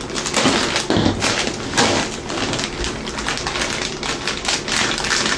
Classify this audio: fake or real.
real